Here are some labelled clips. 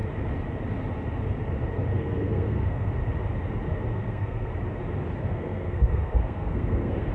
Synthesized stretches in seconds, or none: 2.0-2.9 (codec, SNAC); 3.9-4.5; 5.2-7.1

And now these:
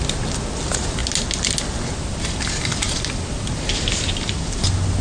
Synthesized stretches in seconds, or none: none

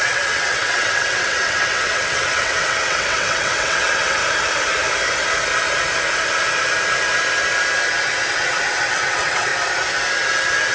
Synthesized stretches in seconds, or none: 0.0-4.2 (vocoder, WaveNeXt); 8.3-9.5

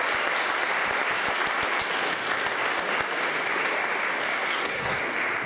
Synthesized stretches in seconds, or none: 4.3-5.0 (codec, SNAC)

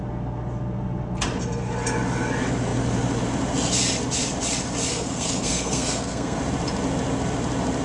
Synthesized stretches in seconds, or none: 4.9-6.4 (codec, SNAC)

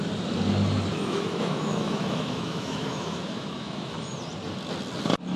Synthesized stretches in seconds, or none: 0.9-4.1 (autoencoder, DAC-VAE)

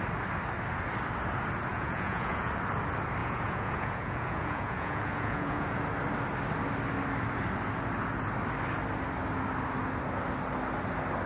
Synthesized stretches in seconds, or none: 1.7-2.5 (vocoder, Vocos); 3.2-5.8

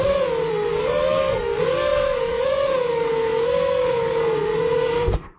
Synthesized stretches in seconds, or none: 0.5-5.4 (codec, SNAC)